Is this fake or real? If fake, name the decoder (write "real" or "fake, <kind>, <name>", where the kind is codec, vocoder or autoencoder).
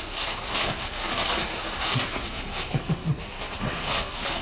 fake, codec, SNAC